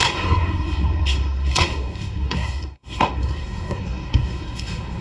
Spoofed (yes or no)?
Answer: yes